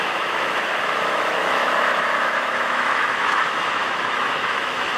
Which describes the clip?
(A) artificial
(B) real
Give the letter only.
A